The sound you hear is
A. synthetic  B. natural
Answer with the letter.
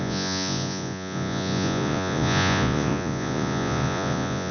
A